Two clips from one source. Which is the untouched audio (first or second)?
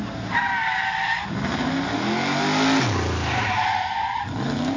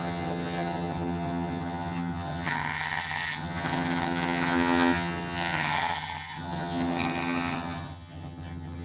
first